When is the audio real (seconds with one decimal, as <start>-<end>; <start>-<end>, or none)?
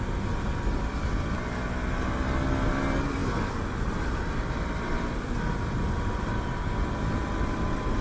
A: 0.0-8.0